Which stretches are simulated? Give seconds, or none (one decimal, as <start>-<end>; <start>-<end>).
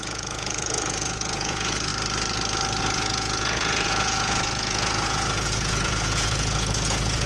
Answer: 0.0-1.9; 2.8-7.3